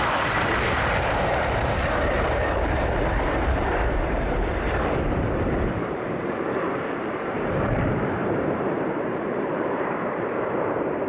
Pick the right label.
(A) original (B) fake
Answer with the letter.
B